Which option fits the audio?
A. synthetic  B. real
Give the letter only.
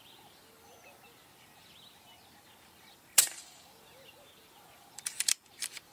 A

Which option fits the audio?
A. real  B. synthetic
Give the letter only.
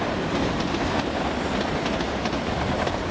A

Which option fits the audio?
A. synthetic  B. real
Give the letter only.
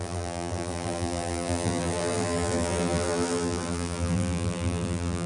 A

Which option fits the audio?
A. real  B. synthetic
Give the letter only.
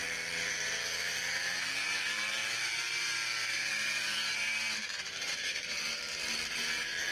B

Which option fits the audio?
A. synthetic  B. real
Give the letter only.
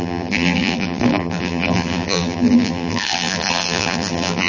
A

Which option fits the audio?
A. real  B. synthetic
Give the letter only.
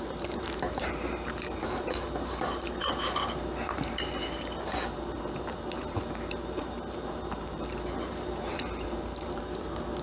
B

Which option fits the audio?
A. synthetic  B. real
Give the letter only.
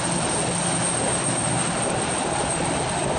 B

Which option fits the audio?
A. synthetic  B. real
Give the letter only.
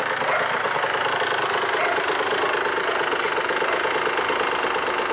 B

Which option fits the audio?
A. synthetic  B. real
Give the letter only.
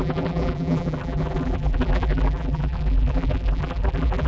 A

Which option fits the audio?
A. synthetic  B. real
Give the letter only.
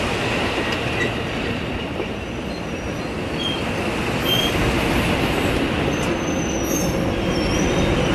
B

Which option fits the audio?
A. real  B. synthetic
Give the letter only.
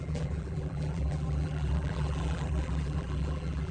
B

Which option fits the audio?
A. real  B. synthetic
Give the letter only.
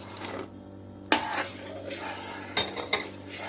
A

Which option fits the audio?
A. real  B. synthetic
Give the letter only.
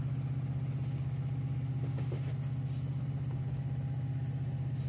A